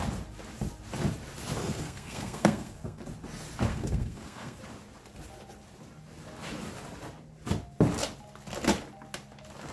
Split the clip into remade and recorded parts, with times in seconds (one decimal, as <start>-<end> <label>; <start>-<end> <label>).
0.0-1.6 recorded; 1.6-3.0 remade; 3.0-3.7 recorded; 3.7-4.6 remade; 4.6-9.7 recorded